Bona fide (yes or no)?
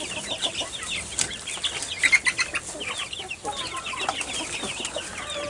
yes